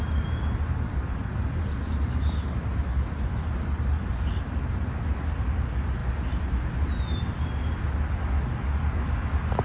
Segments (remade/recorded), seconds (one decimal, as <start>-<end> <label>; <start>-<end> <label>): 0.0-9.6 recorded